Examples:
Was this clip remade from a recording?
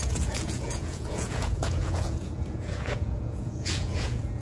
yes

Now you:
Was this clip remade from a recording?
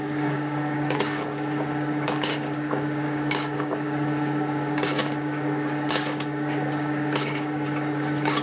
yes